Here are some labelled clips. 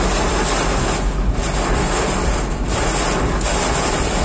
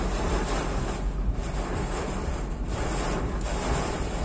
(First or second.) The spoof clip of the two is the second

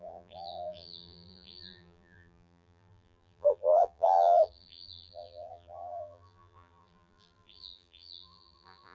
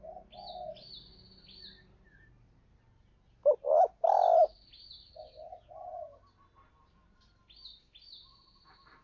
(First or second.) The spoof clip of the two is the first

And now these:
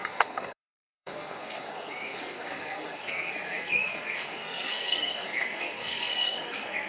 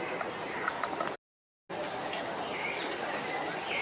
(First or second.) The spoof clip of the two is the first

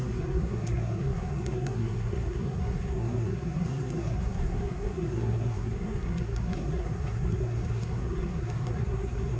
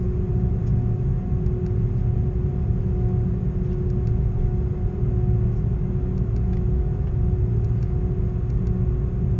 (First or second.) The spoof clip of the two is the first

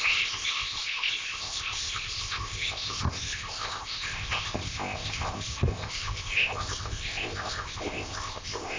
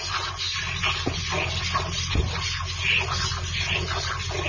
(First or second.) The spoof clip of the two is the first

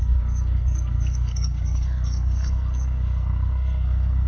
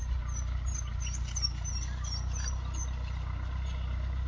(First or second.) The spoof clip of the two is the first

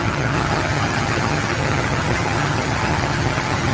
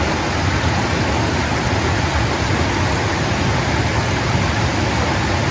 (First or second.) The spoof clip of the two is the first